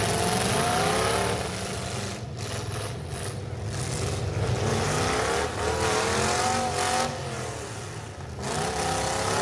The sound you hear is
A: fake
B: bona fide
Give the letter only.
B